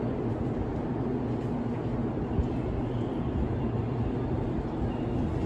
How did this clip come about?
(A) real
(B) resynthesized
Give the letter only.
A